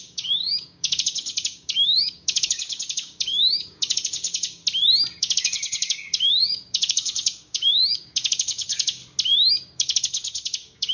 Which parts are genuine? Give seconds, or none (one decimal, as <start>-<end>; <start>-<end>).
4.6-5.2; 9.0-9.5